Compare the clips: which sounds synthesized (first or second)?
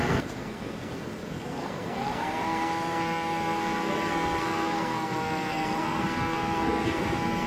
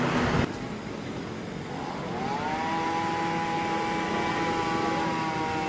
first